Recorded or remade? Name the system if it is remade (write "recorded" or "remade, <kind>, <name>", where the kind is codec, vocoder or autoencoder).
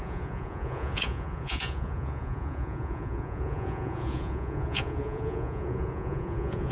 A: remade, vocoder, Vocos